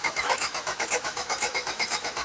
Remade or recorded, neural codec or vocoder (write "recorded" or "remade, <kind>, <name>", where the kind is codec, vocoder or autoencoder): remade, autoencoder, DAC-VAE